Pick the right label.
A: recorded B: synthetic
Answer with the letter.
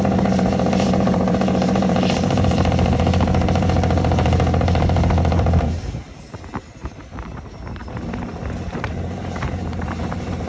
B